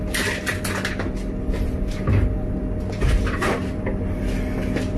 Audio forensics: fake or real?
real